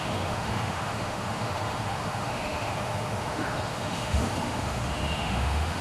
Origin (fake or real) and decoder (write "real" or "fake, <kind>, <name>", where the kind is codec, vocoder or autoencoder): fake, autoencoder, DAC-VAE